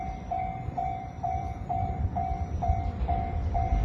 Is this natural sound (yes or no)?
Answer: no